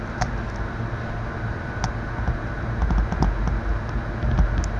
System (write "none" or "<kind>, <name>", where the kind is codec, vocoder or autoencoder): none